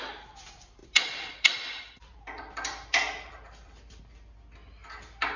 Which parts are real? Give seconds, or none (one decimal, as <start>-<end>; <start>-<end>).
0.0-0.8; 4.0-5.4